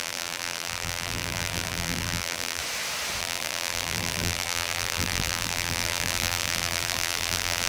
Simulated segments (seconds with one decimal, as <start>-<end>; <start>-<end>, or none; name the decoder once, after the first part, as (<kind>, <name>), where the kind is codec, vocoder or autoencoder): 0.0-2.6 (vocoder, BigVGAN v2); 3.2-7.7